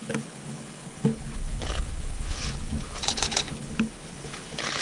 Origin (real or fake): fake